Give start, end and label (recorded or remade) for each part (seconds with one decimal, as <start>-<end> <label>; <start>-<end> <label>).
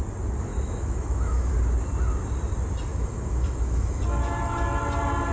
0.0-0.5 recorded; 0.5-1.5 remade; 1.5-2.9 recorded; 2.9-4.0 remade; 4.0-5.3 recorded